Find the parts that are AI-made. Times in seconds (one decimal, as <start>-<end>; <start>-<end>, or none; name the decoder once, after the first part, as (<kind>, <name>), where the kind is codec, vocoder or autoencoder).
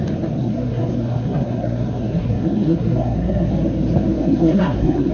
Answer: 0.4-3.5 (codec, SNAC); 4.2-5.1